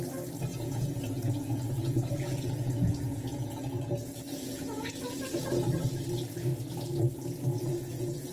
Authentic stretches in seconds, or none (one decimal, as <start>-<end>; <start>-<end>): 0.0-0.5; 5.2-7.5